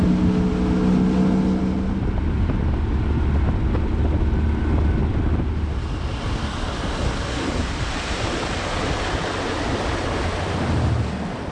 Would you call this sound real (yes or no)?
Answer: yes